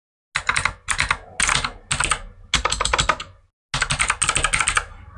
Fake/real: real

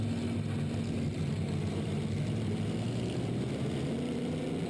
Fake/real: real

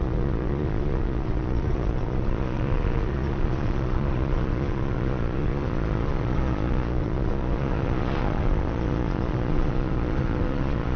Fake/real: fake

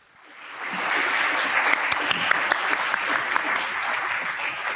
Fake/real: real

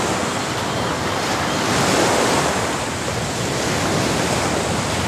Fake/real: real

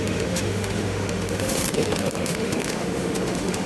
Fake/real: fake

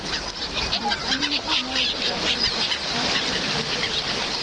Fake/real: fake